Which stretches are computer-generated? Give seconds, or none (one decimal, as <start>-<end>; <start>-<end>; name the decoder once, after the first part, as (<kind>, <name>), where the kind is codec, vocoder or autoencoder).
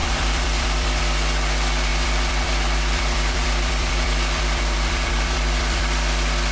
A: 0.0-1.0 (vocoder, BigVGAN v2); 1.9-5.8